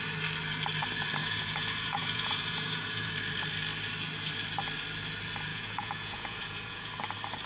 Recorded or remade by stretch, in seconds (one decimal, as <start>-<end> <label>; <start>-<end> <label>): 0.0-1.2 recorded; 1.2-3.1 remade; 3.1-5.5 recorded; 5.5-6.9 remade; 6.9-7.5 recorded